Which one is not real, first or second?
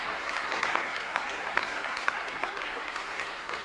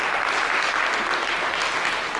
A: first